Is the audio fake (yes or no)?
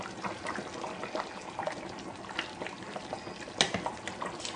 no